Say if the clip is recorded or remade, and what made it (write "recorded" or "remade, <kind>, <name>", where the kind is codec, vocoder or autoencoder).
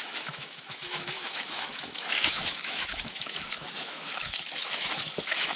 remade, autoencoder, DAC-VAE